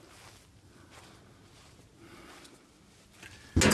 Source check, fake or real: real